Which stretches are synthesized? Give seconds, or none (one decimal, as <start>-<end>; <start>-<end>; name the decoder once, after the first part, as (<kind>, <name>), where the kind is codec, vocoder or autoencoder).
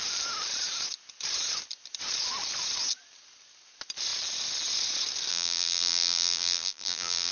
5.3-7.3 (vocoder, BigVGAN v2)